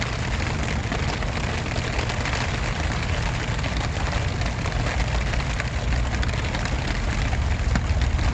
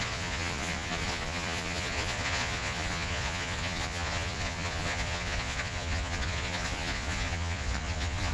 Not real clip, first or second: second